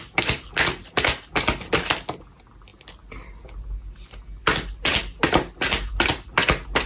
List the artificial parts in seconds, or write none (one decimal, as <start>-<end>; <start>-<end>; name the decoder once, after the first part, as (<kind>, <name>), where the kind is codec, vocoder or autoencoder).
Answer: none